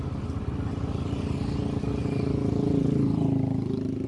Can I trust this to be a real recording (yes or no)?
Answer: yes